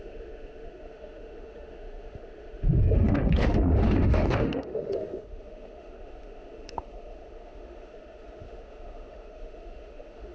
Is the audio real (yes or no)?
no